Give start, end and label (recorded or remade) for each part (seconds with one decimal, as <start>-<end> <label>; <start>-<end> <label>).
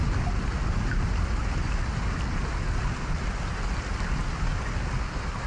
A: 0.0-5.5 recorded